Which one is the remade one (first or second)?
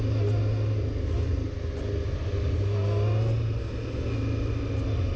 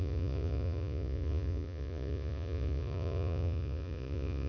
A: second